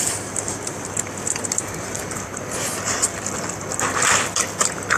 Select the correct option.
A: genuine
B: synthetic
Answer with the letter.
A